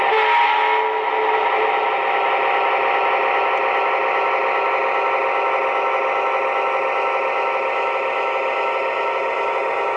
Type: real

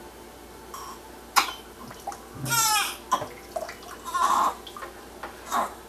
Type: real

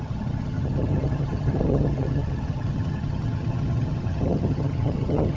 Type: fake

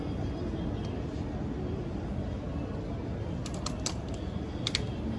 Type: real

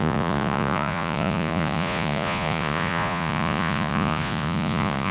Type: fake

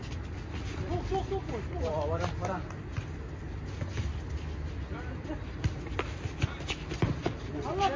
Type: real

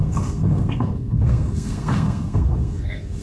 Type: fake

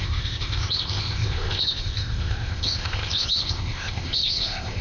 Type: fake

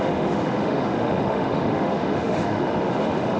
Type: fake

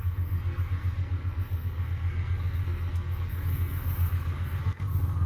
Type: fake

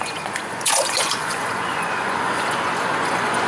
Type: fake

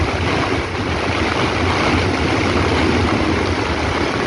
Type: real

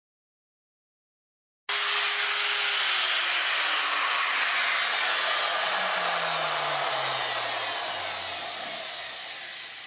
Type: real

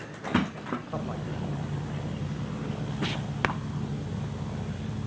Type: real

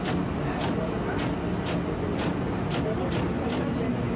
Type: real